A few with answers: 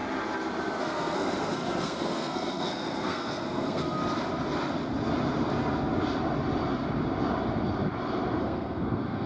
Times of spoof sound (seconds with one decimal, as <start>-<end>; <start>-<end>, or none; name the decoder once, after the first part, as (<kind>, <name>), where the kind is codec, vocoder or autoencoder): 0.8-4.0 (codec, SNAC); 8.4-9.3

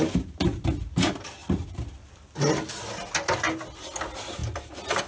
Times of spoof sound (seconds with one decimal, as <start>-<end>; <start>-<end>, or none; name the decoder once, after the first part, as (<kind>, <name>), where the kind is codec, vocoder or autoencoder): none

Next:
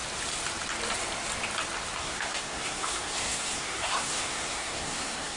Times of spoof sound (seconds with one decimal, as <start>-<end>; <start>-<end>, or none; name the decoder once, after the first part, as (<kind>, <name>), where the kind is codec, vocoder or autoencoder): 2.0-5.4 (codec, SNAC)